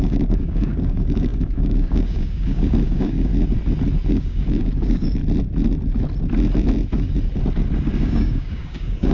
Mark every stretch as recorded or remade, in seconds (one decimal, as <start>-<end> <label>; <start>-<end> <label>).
0.0-3.3 remade; 3.3-4.1 recorded; 4.1-5.2 remade; 5.2-8.0 recorded; 8.0-9.1 remade